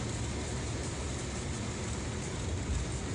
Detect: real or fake real